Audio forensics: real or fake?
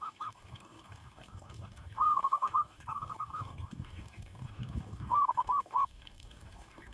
fake